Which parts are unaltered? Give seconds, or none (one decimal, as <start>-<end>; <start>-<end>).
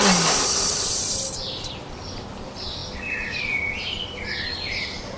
0.0-5.2